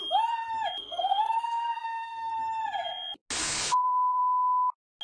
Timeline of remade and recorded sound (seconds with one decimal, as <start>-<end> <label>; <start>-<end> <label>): 0.0-0.8 recorded; 0.8-2.3 remade; 2.3-3.4 recorded; 3.4-4.2 remade; 4.2-5.0 recorded